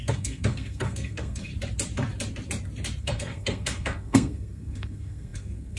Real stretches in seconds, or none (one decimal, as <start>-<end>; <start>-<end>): 1.5-3.0